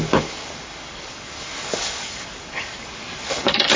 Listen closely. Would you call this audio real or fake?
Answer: fake